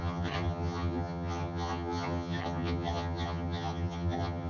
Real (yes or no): no